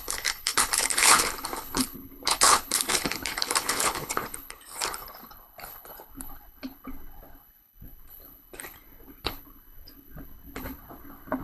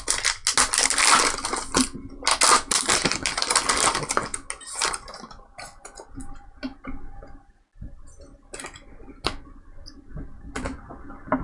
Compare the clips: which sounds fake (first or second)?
first